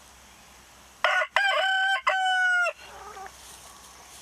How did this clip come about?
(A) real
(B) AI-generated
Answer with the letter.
A